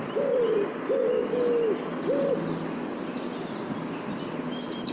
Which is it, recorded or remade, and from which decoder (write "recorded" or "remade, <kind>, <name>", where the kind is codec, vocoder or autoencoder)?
recorded